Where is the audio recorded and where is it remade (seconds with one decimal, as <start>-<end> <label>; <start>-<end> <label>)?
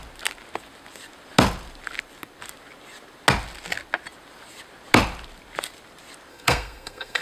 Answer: 0.0-6.3 recorded; 6.3-7.2 remade